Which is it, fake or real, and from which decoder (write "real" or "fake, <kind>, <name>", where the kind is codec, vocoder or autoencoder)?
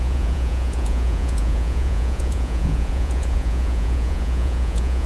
fake, vocoder, Vocos